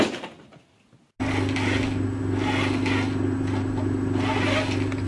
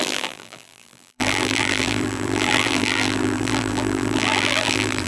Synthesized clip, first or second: second